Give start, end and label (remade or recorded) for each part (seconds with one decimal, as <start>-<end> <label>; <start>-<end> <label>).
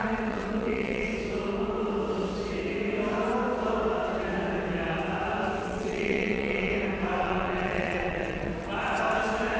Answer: 0.0-1.1 remade; 1.1-5.6 recorded; 5.6-6.7 remade; 6.7-7.2 recorded; 7.2-8.5 remade; 8.5-9.6 recorded